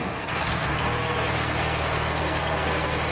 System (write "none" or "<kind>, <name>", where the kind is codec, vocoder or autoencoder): codec, SNAC